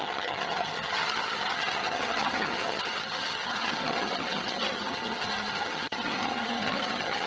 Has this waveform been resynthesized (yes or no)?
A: yes